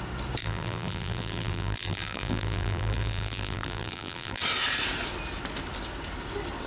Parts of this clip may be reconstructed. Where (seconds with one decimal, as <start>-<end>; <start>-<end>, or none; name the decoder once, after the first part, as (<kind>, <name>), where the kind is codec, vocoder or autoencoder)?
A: 0.4-4.4 (vocoder, BigVGAN v2)